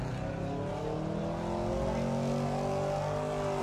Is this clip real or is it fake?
real